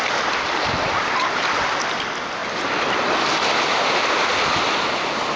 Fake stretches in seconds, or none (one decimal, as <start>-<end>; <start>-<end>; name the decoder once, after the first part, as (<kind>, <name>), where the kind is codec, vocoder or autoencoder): none